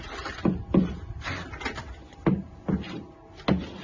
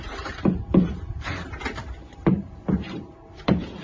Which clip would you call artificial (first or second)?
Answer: second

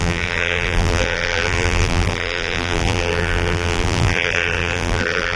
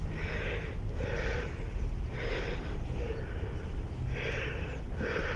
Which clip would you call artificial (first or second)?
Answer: first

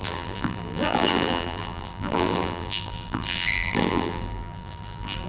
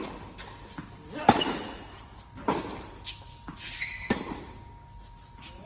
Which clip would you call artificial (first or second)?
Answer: first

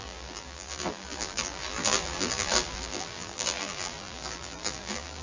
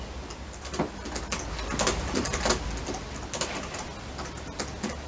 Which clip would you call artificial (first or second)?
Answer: first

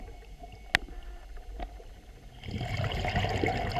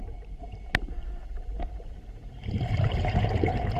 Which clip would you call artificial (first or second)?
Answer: second